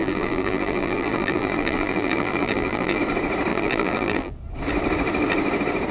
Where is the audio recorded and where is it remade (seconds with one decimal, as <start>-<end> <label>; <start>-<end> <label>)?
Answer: 0.0-3.0 remade; 3.0-3.5 recorded; 3.5-4.3 remade; 4.3-5.9 recorded